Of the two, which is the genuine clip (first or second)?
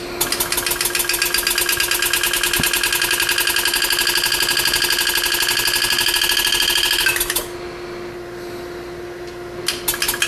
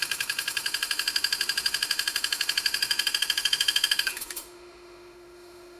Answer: first